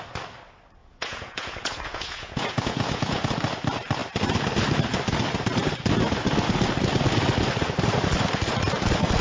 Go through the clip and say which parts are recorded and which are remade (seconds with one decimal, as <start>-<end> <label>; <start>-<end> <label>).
0.0-0.8 recorded; 0.8-3.3 remade; 3.3-9.2 recorded